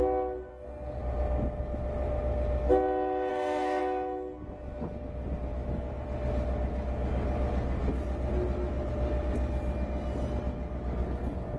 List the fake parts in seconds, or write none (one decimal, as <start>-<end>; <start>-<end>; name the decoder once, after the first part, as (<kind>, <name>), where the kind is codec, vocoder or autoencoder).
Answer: 0.5-1.0 (codec, SNAC); 3.3-3.8